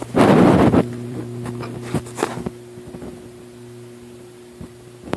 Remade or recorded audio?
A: remade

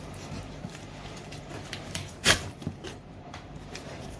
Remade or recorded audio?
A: remade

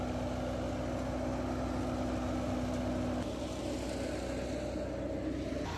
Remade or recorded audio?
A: recorded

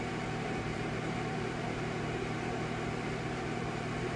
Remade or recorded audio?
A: remade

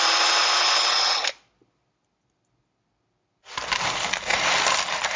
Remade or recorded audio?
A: recorded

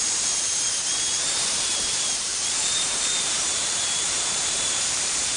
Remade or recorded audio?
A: remade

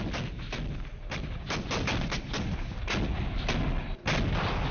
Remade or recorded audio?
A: recorded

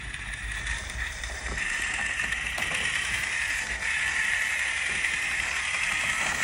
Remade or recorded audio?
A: remade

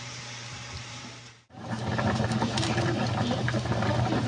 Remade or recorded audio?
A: remade